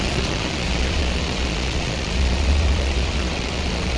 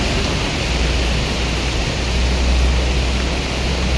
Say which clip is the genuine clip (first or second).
second